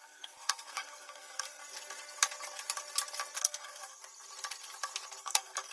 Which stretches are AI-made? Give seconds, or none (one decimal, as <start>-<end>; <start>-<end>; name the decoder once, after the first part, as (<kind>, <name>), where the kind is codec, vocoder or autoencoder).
0.0-1.6 (codec, SNAC); 3.4-4.0; 5.2-5.7